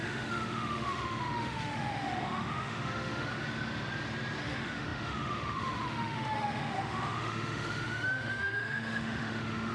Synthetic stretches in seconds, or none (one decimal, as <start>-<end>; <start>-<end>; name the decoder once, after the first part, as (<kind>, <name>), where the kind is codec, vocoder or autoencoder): 0.0-3.3 (autoencoder, DAC-VAE); 4.4-9.7

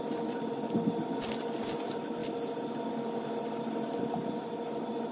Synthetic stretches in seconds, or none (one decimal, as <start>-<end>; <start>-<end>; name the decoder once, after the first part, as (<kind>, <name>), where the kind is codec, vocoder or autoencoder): none

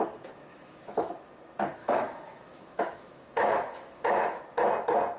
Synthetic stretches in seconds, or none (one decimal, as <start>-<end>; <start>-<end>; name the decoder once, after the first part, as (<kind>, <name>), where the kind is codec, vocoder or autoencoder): 0.5-1.1 (autoencoder, DAC-VAE); 1.8-4.4

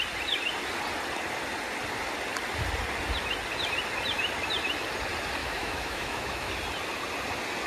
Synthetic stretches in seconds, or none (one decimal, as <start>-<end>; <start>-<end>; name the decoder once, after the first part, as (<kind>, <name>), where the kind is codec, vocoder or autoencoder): 5.4-6.5 (autoencoder, DAC-VAE)

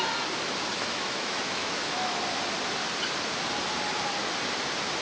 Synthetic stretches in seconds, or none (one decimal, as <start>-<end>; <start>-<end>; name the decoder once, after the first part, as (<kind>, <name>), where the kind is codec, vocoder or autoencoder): 0.7-2.2 (autoencoder, DAC-VAE)